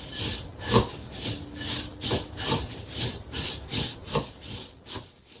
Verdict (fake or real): real